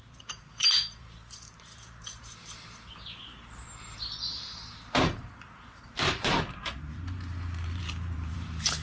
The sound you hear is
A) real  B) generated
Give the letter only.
B